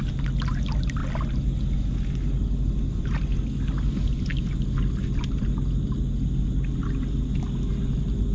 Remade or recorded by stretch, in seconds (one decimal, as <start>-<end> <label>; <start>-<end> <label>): 0.0-8.3 recorded